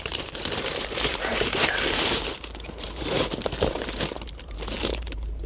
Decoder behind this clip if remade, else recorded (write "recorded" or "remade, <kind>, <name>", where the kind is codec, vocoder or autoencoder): remade, vocoder, BigVGAN v2